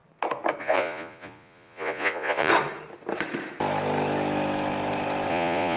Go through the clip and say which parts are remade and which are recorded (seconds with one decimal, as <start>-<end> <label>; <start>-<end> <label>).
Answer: 0.0-0.6 recorded; 0.6-2.5 remade; 2.5-5.3 recorded; 5.3-5.8 remade